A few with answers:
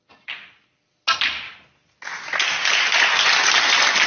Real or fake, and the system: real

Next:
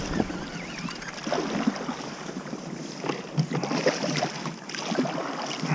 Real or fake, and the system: real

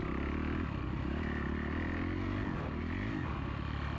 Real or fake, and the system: real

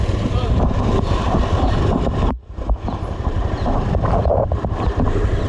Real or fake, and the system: fake, vocoder, BigVGAN v2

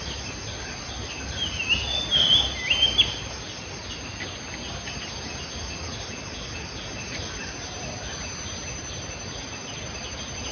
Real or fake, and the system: real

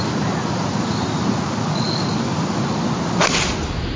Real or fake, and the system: real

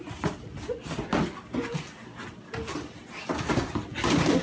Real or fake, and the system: real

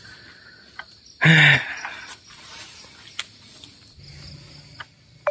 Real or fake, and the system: real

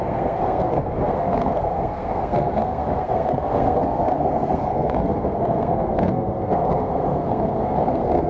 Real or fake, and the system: fake, codec, SNAC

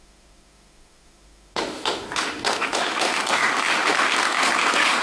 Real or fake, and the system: fake, autoencoder, DAC-VAE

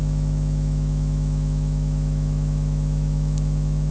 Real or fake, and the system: fake, autoencoder, DAC-VAE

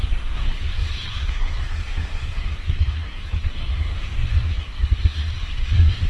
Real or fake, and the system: fake, codec, SNAC